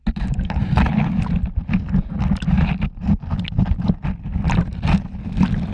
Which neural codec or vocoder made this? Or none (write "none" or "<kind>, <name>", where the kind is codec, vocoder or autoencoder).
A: none